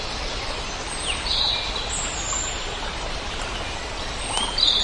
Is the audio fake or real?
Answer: real